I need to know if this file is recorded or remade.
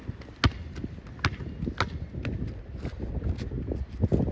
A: recorded